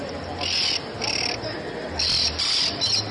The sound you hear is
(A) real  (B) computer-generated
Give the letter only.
A